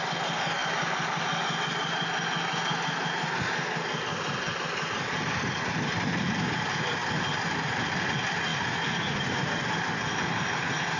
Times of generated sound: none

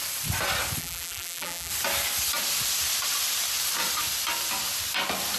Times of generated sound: 0.8-1.7 (vocoder, BigVGAN v2)

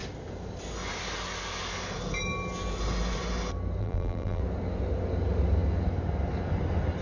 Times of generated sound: 3.8-4.4 (vocoder, BigVGAN v2)

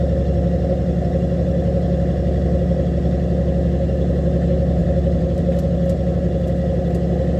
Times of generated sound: 4.8-5.4 (vocoder, BigVGAN v2)

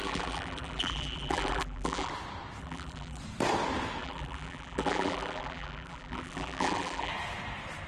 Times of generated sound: 0.0-2.1 (vocoder, BigVGAN v2); 2.6-3.2; 4.0-7.1

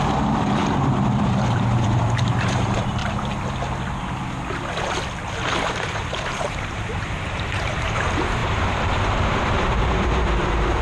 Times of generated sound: 0.0-3.0 (vocoder, BigVGAN v2); 5.7-10.8

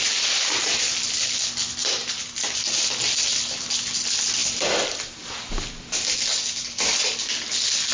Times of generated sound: 1.8-2.3 (vocoder, BigVGAN v2)

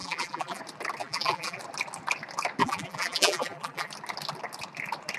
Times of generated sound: 0.0-0.6 (vocoder, BigVGAN v2); 1.0-1.6; 2.6-3.9